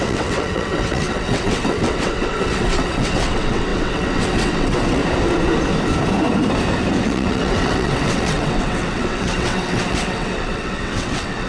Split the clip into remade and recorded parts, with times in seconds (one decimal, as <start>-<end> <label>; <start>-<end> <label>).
0.0-5.0 remade; 5.0-7.0 recorded; 7.0-11.5 remade